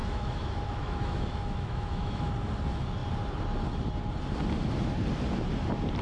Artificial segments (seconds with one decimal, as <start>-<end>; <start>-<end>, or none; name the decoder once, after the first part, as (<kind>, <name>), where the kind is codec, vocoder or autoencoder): 0.0-2.3 (autoencoder, DAC-VAE)